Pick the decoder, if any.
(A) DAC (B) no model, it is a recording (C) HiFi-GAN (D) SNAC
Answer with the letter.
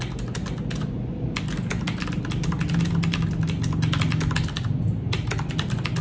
B